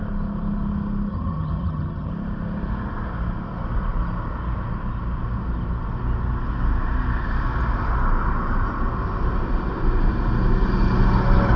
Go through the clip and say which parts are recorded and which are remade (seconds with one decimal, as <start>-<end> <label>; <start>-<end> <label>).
0.0-1.1 recorded; 1.1-2.1 remade; 2.1-11.6 recorded